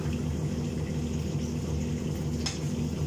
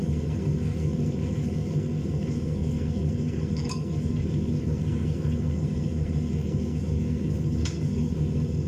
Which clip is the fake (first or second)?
second